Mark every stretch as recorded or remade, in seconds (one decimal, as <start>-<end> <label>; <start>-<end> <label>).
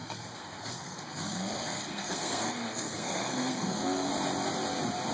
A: 0.0-4.1 remade; 4.1-5.1 recorded